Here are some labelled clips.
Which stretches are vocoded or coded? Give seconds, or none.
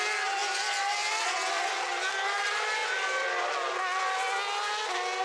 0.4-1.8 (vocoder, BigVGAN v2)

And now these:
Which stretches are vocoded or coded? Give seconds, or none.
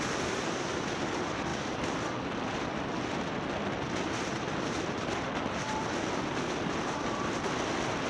none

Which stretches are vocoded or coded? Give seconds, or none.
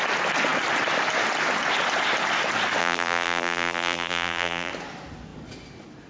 2.8-4.7 (vocoder, BigVGAN v2)